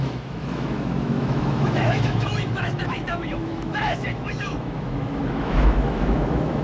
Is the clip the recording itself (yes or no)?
no